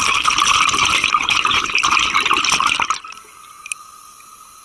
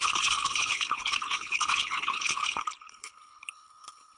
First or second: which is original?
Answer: first